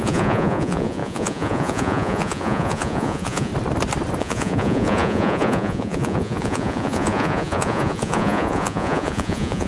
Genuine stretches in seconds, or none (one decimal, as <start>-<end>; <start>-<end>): 3.5-4.2